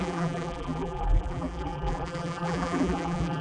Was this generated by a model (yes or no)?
yes